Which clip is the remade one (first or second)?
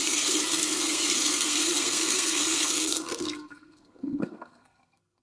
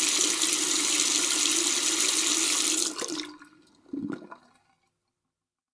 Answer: first